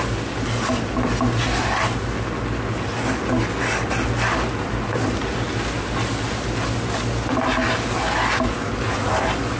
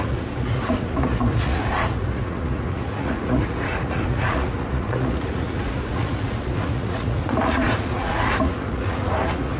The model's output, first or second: second